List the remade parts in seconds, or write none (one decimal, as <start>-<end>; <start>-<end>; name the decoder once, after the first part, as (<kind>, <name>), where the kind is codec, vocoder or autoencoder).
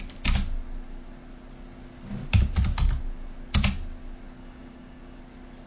4.4-5.2 (codec, DAC)